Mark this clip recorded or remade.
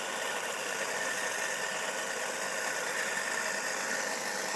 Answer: recorded